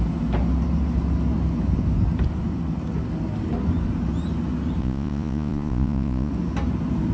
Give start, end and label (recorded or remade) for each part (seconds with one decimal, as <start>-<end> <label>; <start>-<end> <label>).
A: 0.0-4.8 recorded; 4.8-6.3 remade; 6.3-7.1 recorded

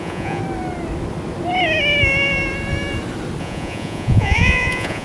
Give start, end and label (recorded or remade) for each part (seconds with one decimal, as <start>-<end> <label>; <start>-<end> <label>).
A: 0.0-0.4 remade; 0.4-3.4 recorded; 3.4-5.0 remade